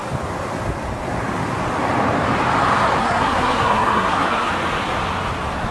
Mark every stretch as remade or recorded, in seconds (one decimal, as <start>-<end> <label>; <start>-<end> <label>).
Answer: 0.0-3.0 recorded; 3.0-4.5 remade; 4.5-5.7 recorded